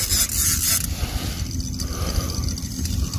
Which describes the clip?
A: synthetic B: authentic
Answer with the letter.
B